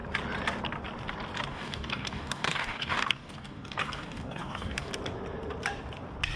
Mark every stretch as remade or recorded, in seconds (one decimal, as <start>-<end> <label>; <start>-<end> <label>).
0.0-1.5 recorded; 1.5-4.9 remade; 4.9-6.4 recorded